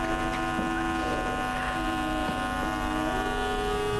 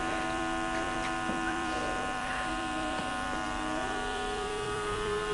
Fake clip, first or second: second